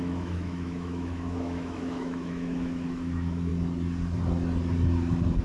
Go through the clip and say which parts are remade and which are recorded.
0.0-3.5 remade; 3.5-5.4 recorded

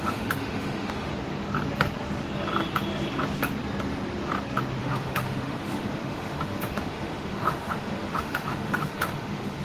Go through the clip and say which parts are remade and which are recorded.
0.0-1.1 remade; 1.1-4.8 recorded; 4.8-9.6 remade

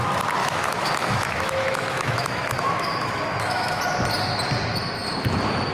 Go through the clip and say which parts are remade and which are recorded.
0.0-0.4 recorded; 0.4-3.8 remade; 3.8-5.7 recorded

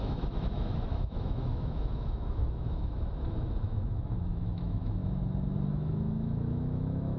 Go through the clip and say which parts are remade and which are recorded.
0.0-5.0 remade; 5.0-5.7 recorded; 5.7-7.2 remade

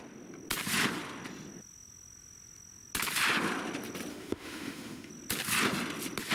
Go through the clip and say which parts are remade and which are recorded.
0.0-4.1 recorded; 4.1-5.1 remade; 5.1-6.3 recorded